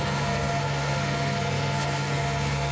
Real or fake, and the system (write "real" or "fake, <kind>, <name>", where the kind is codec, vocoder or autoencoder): fake, codec, SNAC